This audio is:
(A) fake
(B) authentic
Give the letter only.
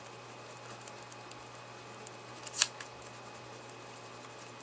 A